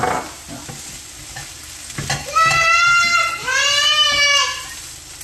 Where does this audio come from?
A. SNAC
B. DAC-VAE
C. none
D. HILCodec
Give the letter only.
C